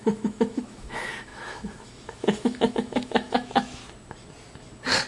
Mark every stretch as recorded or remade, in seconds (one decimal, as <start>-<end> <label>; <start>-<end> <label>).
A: 0.0-3.8 remade; 3.8-5.1 recorded